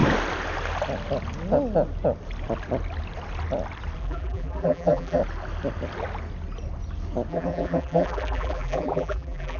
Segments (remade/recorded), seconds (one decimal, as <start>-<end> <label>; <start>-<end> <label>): 0.0-4.0 recorded; 4.0-5.2 remade; 5.2-7.3 recorded; 7.3-9.6 remade

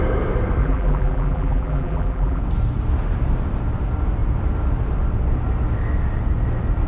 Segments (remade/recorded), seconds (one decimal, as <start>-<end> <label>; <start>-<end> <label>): 0.0-0.6 recorded; 0.6-2.4 remade; 2.4-6.9 recorded

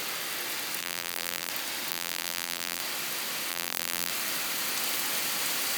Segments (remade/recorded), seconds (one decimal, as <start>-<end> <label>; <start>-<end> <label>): 0.0-0.8 recorded; 0.8-1.5 remade; 1.5-1.9 recorded; 1.9-2.8 remade; 2.8-3.5 recorded; 3.5-4.1 remade; 4.1-5.8 recorded

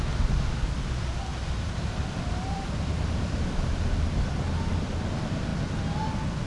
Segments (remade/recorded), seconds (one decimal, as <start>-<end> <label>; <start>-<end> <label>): 0.0-1.3 recorded; 1.3-3.5 remade; 3.5-6.5 recorded

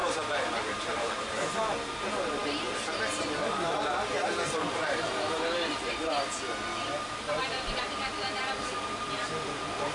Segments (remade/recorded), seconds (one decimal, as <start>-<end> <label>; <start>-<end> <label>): 0.0-1.5 remade; 1.5-4.2 recorded; 4.2-5.9 remade; 5.9-7.4 recorded; 7.4-8.1 remade; 8.1-9.9 recorded

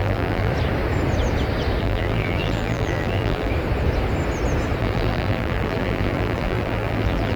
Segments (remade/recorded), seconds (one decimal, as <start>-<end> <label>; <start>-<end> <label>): 0.0-0.5 remade; 0.5-1.8 recorded; 1.8-3.5 remade; 3.5-4.8 recorded; 4.8-7.4 remade

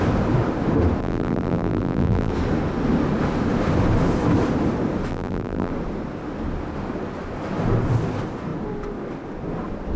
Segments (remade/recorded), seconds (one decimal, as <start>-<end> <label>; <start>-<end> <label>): 0.0-1.0 recorded; 1.0-2.3 remade; 2.3-5.1 recorded; 5.1-5.7 remade; 5.7-10.0 recorded

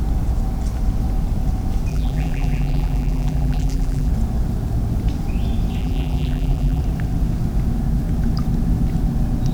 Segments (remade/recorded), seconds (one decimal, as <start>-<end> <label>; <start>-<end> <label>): 0.0-1.9 recorded; 1.9-4.1 remade; 4.1-5.8 recorded; 5.8-6.8 remade; 6.8-9.5 recorded